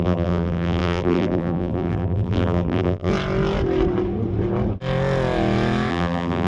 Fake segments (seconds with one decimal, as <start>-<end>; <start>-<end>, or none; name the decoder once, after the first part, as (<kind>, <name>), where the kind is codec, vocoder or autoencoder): 0.0-3.1 (vocoder, BigVGAN v2); 5.9-6.5